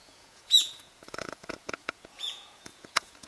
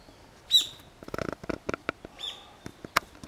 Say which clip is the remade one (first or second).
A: first